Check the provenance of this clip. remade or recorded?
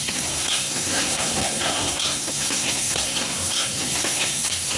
remade